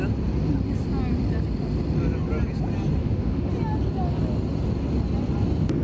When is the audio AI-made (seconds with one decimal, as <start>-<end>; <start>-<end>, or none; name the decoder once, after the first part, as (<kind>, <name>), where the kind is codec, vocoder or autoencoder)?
3.0-3.5 (autoencoder, DAC-VAE)